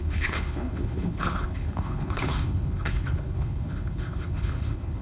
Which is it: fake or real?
fake